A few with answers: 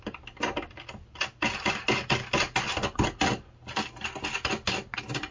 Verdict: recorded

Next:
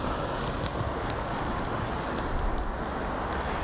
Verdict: recorded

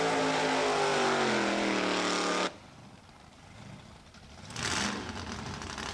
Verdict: recorded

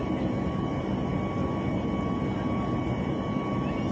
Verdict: recorded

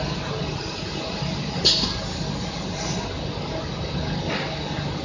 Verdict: recorded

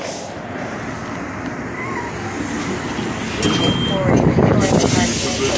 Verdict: recorded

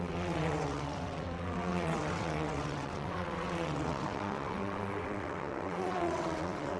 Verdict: remade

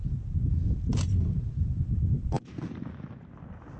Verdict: recorded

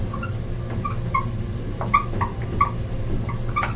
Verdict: recorded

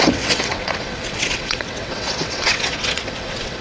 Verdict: remade